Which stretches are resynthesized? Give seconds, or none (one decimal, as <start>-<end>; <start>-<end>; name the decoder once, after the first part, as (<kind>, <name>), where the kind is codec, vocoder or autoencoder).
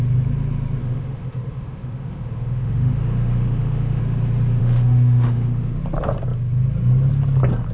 0.8-4.0 (autoencoder, DAC-VAE); 4.6-5.8